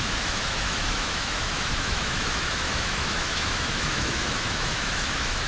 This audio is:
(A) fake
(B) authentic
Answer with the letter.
A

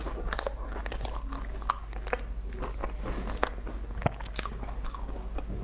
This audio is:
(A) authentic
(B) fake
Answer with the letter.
A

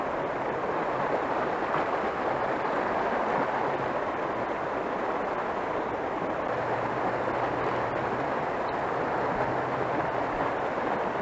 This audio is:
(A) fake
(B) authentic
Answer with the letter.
B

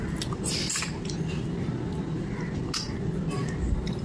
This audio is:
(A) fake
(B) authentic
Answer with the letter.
B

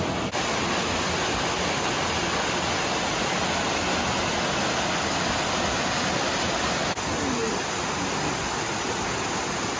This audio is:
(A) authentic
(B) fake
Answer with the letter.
A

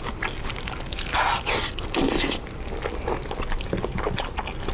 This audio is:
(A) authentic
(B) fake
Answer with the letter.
A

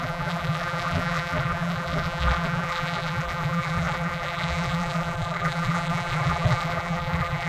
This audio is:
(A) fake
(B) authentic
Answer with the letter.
A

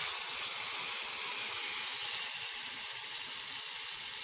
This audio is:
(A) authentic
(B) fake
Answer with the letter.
A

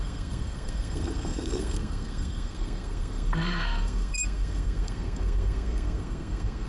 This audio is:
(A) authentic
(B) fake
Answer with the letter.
B